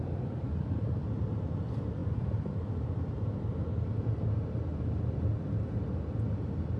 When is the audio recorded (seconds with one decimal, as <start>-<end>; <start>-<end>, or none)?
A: 0.0-6.8